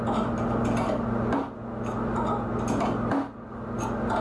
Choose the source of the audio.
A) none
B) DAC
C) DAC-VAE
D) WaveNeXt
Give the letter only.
A